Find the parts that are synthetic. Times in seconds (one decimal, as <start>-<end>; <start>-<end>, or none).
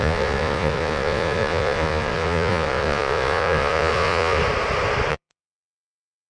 0.0-4.4; 5.1-6.3